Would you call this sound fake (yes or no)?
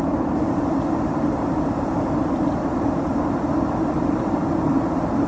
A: yes